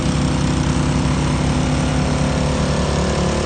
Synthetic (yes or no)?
no